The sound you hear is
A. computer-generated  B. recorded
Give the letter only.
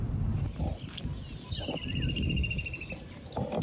B